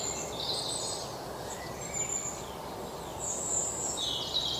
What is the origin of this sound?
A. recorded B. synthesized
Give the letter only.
A